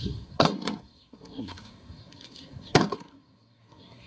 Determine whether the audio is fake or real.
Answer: fake